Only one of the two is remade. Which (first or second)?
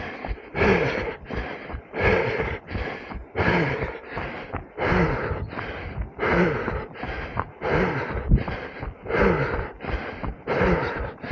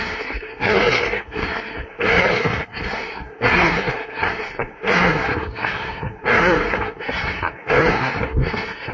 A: second